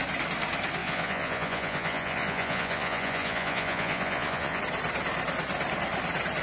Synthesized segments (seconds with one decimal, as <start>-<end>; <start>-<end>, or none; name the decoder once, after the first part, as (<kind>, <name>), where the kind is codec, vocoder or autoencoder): 0.8-4.6 (vocoder, Vocos)